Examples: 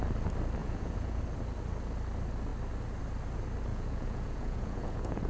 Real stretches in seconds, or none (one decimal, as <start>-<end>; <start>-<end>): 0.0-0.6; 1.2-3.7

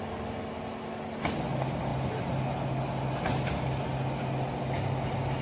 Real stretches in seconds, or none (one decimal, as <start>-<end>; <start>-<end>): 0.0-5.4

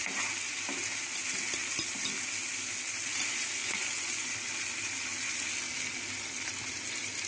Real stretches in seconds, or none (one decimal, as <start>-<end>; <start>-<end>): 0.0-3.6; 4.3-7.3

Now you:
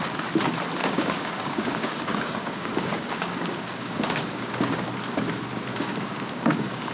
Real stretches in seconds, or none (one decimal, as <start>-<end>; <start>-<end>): 0.0-0.8; 4.9-5.7

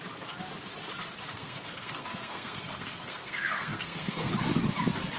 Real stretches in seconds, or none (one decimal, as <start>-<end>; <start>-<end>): 0.0-1.3; 4.3-5.2

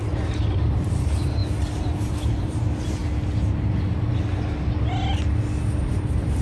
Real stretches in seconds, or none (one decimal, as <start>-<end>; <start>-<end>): 1.4-2.3; 3.0-5.8